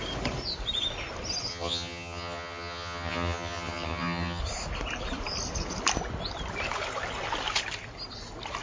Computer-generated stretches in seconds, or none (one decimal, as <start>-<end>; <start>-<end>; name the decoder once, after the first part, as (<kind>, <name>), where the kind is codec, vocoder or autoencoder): 1.5-4.4 (vocoder, HiFi-GAN)